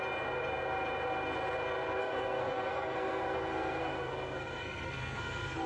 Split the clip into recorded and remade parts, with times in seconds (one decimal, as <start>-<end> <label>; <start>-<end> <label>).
0.0-2.0 recorded; 2.0-5.7 remade